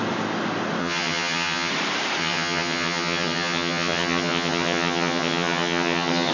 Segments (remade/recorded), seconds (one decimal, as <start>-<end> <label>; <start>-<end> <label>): 0.0-0.8 recorded; 0.8-1.7 remade; 1.7-2.2 recorded; 2.2-6.3 remade